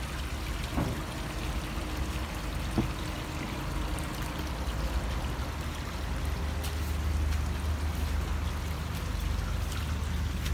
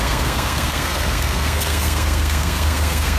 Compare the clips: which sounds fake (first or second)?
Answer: second